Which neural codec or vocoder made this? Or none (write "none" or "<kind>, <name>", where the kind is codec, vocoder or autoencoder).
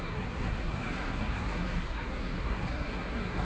codec, SNAC